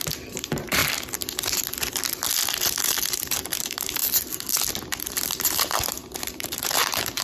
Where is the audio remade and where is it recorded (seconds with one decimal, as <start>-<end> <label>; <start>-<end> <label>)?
0.0-0.8 remade; 0.8-3.1 recorded; 3.1-4.0 remade; 4.0-5.0 recorded; 5.0-7.2 remade